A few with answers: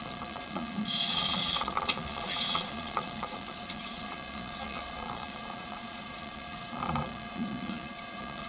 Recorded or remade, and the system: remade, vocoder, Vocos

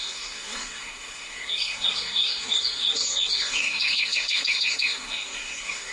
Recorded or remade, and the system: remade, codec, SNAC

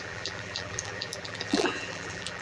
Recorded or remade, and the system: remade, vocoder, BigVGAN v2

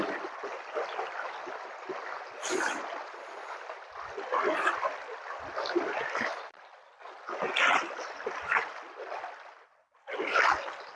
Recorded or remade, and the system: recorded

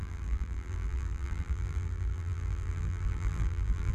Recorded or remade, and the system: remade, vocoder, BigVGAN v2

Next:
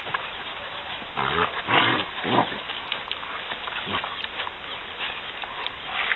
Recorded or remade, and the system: remade, vocoder, BigVGAN v2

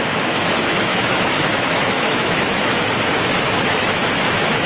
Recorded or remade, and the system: remade, autoencoder, DAC-VAE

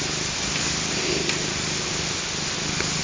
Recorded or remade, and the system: recorded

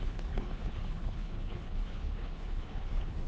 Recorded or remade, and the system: remade, codec, HILCodec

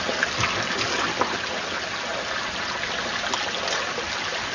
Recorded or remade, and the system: recorded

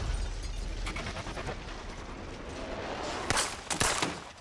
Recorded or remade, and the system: recorded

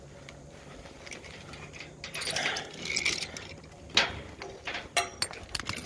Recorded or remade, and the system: recorded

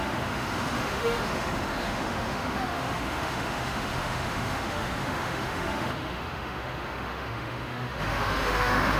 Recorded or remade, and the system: remade, autoencoder, DAC-VAE